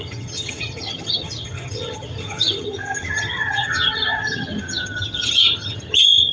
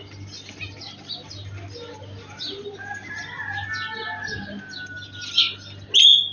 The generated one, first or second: first